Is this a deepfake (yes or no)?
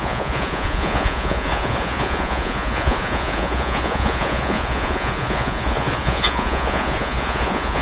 yes